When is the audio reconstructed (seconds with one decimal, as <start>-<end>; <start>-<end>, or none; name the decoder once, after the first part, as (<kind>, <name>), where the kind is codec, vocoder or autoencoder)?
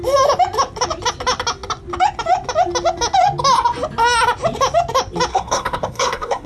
5.3-6.5 (codec, SNAC)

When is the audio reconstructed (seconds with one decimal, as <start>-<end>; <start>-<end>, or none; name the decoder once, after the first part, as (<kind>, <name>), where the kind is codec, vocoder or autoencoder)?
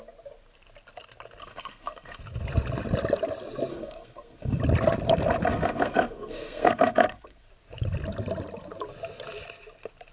1.4-2.2 (codec, SNAC); 3.7-4.6; 5.5-7.5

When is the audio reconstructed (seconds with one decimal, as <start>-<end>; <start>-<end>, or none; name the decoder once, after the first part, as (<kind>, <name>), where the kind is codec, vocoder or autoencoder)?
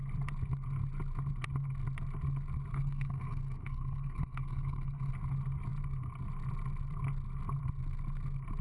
2.7-5.1 (codec, SNAC)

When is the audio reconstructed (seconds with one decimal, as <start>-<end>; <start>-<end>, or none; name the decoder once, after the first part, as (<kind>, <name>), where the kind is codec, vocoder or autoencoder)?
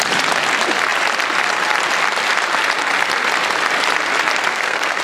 4.5-5.0 (codec, SNAC)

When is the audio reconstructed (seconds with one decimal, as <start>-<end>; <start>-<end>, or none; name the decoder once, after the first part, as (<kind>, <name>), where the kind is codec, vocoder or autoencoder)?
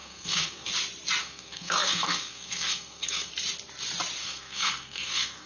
0.0-0.7 (codec, SNAC); 1.2-3.3; 4.2-5.5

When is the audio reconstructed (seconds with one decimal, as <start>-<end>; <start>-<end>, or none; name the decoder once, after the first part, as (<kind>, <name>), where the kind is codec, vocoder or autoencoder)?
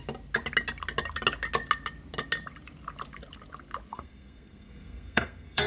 3.9-5.7 (codec, SNAC)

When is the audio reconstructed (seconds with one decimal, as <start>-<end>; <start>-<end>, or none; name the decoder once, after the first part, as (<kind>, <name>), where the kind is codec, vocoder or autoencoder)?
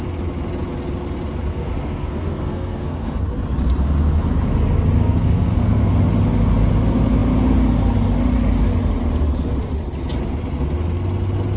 1.5-3.2 (codec, SNAC); 5.0-5.9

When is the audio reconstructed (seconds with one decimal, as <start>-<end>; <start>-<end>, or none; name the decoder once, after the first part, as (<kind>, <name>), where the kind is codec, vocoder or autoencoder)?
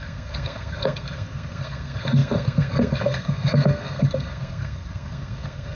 0.0-5.8 (codec, SNAC)